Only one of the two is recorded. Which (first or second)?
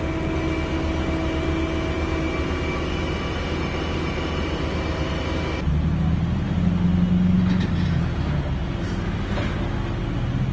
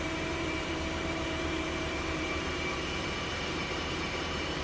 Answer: first